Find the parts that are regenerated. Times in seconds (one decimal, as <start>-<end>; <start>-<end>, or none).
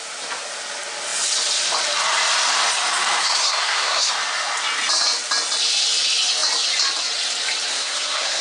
3.2-4.1; 7.7-8.4